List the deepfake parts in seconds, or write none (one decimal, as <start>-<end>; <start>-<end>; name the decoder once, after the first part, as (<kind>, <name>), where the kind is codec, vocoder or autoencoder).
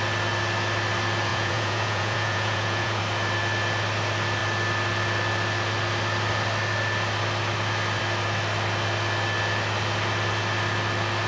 1.3-3.0 (vocoder, Vocos)